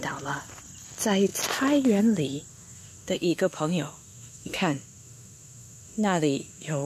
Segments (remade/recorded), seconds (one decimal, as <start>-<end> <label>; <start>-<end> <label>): 0.0-2.5 recorded; 2.5-6.9 remade

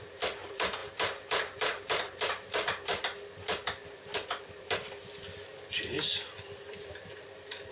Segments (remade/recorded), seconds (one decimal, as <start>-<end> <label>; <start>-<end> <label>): 0.0-7.7 remade

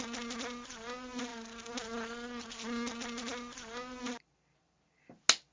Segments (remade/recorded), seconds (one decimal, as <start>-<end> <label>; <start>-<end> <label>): 0.0-5.5 recorded

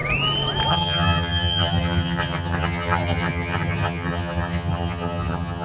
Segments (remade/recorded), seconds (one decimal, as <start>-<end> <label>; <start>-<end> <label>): 0.0-0.7 recorded; 0.7-5.6 remade

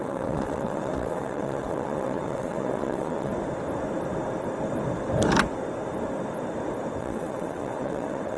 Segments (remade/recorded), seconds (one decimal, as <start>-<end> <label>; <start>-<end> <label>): 0.0-3.3 remade; 3.3-7.0 recorded; 7.0-8.4 remade

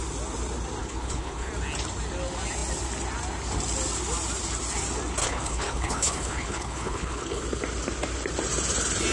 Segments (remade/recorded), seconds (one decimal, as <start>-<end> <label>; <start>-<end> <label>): 0.0-0.8 recorded; 0.8-1.5 remade; 1.5-5.2 recorded; 5.2-7.4 remade; 7.4-9.1 recorded

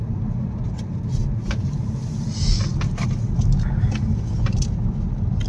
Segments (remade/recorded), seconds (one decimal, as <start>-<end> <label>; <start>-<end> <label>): 0.0-5.5 recorded

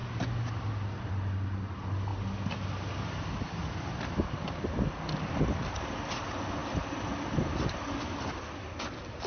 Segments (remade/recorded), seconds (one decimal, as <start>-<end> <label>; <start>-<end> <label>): 0.0-9.3 recorded